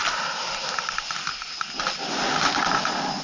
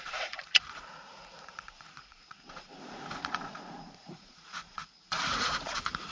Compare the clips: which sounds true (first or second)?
first